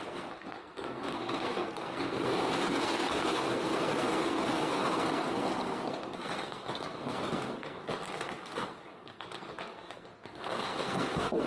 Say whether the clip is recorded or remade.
remade